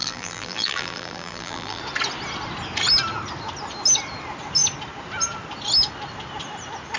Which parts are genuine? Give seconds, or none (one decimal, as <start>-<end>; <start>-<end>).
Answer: 1.8-7.0